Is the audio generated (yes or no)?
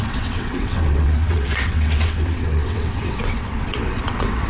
yes